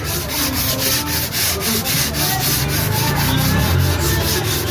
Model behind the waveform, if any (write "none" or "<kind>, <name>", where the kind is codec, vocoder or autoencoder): none